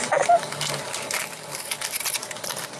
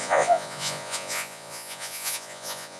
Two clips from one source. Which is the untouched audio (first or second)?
first